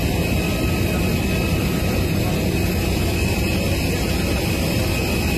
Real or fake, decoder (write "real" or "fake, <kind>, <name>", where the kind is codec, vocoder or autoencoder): real